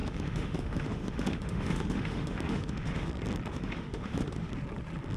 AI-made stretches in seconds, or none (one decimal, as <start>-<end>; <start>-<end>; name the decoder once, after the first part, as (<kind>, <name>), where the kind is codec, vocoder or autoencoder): 0.0-3.1 (autoencoder, DAC-VAE); 3.5-4.5